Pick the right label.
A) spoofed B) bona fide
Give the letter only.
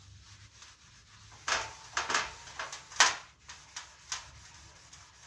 B